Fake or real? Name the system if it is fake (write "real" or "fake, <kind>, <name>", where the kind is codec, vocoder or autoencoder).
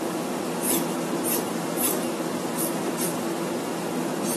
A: real